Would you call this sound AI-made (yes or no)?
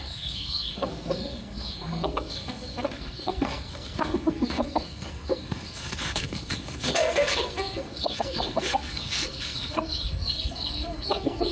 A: yes